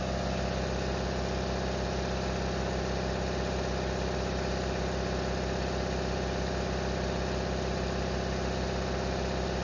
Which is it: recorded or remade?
recorded